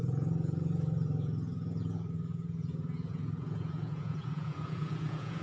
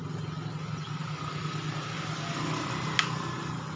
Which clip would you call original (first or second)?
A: second